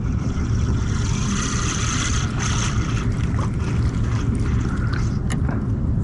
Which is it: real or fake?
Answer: real